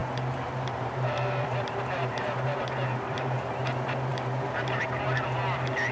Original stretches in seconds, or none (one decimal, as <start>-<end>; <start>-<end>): 3.5-4.1; 4.8-5.9